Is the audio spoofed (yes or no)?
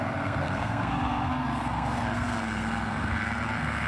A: yes